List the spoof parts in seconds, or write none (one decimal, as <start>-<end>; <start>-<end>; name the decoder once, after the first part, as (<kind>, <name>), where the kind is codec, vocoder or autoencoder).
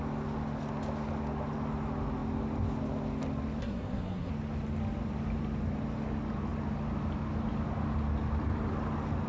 3.6-4.3 (codec, SNAC)